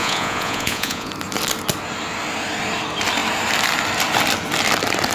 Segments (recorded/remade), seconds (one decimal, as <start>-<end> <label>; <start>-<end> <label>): 0.0-1.1 remade; 1.1-5.1 recorded